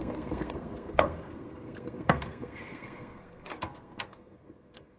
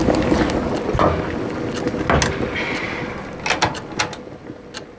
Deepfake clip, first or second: first